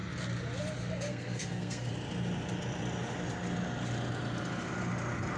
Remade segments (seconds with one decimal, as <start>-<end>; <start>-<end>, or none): 1.1-1.9